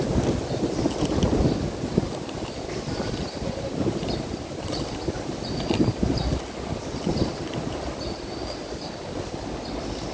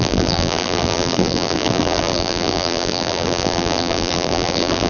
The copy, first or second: second